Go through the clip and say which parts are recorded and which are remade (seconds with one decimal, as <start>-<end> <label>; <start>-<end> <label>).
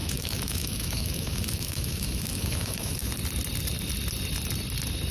0.0-3.1 remade; 3.1-5.1 recorded